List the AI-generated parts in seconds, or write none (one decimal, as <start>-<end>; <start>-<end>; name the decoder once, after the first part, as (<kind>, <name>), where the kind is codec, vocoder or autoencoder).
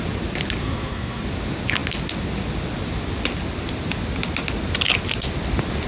0.6-1.2 (codec, SNAC)